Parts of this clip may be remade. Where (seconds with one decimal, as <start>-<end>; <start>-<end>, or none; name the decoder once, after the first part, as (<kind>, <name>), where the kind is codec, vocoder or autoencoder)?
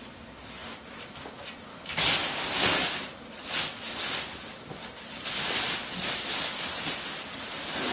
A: none